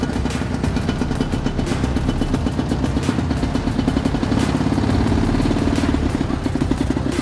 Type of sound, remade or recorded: recorded